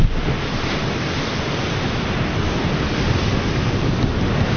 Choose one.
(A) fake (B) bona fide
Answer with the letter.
B